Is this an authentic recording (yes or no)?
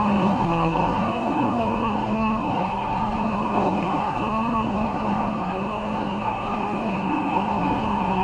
no